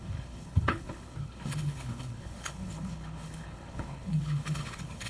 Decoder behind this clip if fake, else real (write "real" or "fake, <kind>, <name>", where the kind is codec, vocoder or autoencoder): fake, codec, HILCodec